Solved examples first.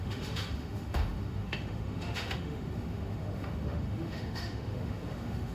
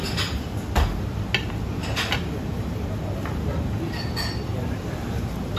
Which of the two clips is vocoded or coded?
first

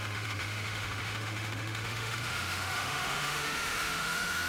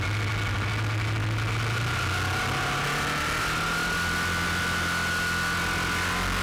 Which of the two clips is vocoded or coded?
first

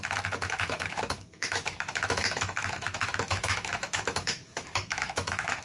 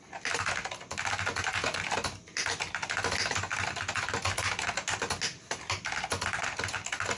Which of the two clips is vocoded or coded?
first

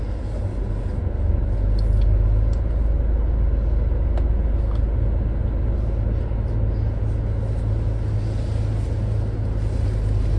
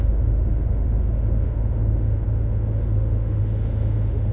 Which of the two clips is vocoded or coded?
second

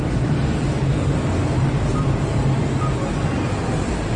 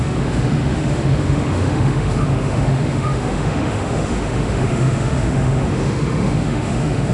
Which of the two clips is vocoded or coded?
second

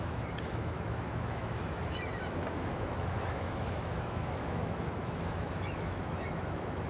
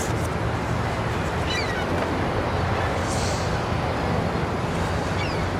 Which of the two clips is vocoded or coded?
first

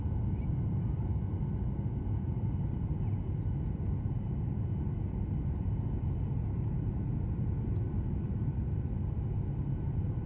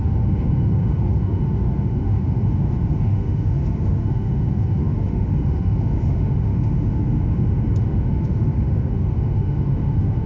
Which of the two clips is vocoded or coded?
second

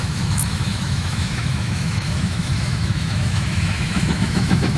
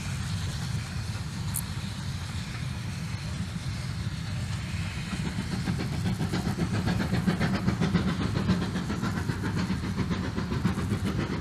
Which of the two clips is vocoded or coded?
first